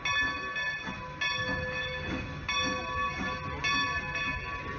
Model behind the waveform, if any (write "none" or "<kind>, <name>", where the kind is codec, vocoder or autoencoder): none